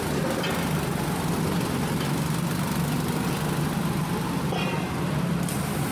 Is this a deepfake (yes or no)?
no